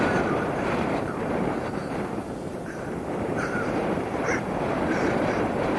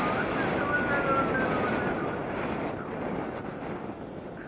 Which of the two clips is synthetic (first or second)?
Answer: first